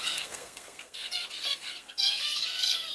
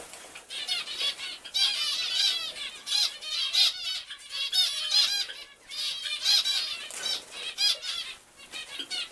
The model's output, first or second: first